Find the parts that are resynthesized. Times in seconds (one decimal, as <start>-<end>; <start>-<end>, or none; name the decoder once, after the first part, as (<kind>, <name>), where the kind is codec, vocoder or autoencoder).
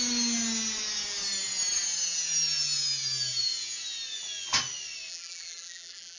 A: 5.1-6.2 (vocoder, BigVGAN v2)